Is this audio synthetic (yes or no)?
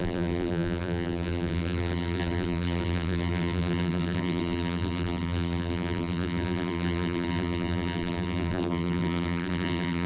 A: yes